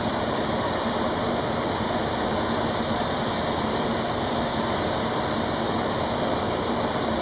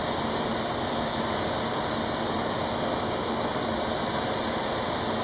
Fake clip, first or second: first